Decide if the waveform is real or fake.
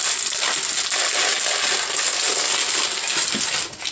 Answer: real